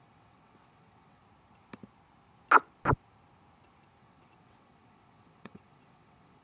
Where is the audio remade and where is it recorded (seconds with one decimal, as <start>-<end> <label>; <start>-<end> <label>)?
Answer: 0.0-1.2 remade; 1.2-4.0 recorded; 4.0-6.4 remade